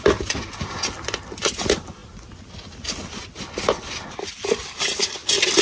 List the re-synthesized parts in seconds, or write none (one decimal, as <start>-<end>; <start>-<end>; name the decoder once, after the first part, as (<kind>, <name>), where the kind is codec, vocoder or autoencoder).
none